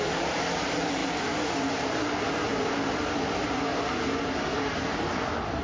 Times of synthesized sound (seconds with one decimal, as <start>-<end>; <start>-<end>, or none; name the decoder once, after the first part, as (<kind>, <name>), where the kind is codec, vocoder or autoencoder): 0.0-5.6 (vocoder, BigVGAN v2)